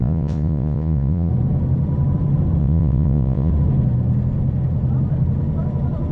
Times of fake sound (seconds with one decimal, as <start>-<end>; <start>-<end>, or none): 0.0-1.3; 2.6-3.5